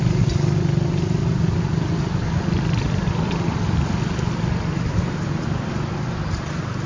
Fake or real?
real